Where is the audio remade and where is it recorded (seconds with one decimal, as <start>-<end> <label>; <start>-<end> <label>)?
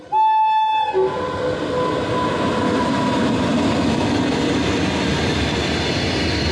0.0-6.5 recorded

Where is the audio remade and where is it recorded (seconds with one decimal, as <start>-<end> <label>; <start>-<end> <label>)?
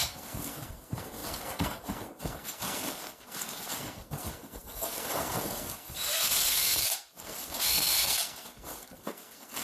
0.0-9.6 remade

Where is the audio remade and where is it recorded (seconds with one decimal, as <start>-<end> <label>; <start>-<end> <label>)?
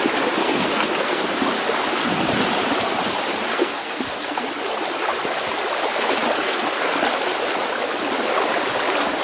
0.0-0.4 recorded; 0.4-1.3 remade; 1.3-3.5 recorded; 3.5-4.4 remade; 4.4-6.4 recorded; 6.4-7.0 remade; 7.0-9.2 recorded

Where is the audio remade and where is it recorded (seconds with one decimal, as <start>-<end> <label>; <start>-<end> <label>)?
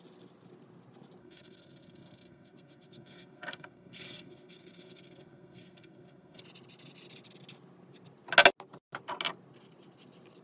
0.0-1.2 recorded; 1.2-6.4 remade; 6.4-10.4 recorded